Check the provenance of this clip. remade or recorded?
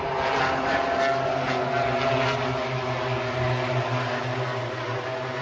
recorded